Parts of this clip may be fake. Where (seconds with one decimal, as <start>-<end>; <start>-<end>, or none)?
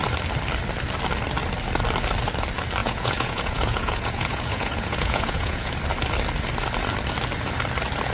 2.8-5.7